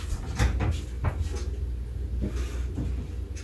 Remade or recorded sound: recorded